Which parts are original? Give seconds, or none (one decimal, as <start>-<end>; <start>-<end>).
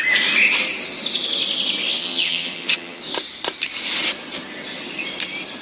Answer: 0.0-2.0; 3.0-5.6